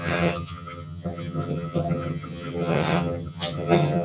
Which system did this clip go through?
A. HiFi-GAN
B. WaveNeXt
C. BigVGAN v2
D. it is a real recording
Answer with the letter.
A